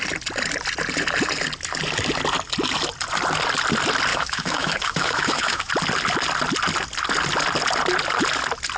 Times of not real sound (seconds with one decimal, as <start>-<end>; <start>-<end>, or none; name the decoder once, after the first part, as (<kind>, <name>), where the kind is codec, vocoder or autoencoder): 4.1-5.7 (autoencoder, DAC-VAE)